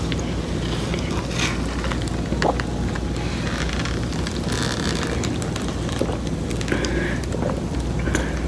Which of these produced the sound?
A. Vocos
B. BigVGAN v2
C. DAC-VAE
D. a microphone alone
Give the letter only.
D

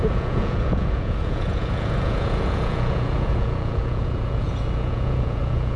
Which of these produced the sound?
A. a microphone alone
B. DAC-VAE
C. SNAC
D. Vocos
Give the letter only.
D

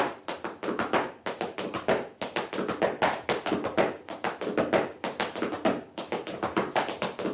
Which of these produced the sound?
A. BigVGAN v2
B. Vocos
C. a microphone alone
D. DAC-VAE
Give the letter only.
C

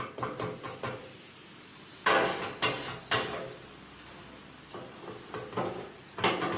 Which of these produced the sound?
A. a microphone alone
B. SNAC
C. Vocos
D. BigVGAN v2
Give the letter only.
A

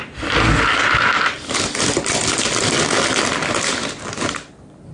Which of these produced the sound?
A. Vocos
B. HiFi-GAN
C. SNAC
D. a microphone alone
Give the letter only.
D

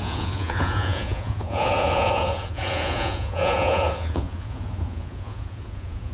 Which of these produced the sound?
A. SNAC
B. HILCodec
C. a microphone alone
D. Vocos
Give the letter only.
D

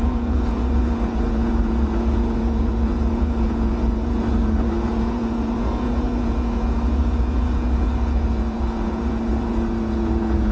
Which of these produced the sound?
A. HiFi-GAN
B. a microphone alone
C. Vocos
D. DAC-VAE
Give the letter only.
C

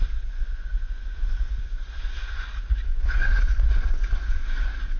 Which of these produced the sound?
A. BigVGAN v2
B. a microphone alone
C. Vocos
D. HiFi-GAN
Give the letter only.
C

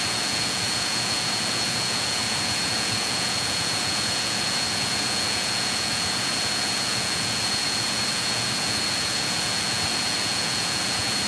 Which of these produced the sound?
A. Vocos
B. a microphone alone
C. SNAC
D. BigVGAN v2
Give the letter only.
A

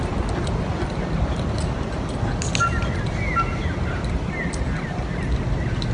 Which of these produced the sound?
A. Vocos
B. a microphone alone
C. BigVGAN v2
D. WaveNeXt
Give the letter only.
B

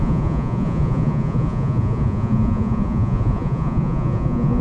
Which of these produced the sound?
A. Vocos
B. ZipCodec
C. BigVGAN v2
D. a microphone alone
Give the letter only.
A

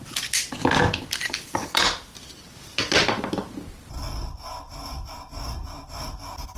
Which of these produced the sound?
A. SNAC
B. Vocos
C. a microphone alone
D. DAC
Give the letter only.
C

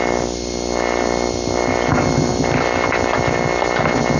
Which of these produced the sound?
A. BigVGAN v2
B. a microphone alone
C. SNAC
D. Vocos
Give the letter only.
B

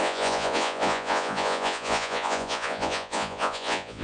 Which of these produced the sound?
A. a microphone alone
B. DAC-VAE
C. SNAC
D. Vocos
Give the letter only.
D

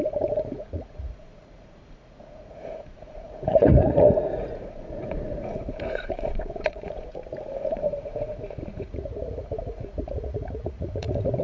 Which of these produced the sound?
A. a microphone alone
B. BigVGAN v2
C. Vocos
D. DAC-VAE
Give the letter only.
C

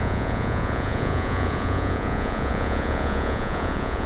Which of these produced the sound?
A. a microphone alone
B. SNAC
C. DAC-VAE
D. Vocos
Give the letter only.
D